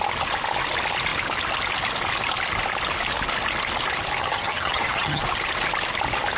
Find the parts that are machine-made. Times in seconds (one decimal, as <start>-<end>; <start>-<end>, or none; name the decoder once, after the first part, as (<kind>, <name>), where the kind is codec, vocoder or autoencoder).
4.2-5.2 (vocoder, HiFi-GAN)